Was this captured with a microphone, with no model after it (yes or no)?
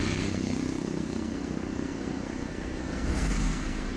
no